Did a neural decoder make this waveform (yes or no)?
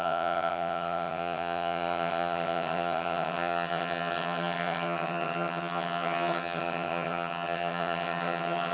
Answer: yes